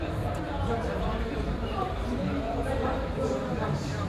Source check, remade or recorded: remade